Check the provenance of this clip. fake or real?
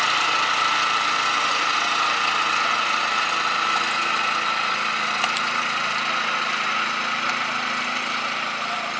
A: real